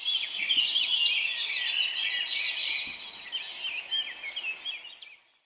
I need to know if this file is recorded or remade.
recorded